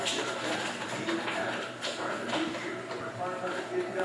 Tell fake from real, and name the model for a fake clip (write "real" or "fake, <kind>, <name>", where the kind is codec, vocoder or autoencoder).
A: real